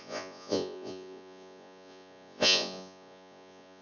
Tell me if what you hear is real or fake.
fake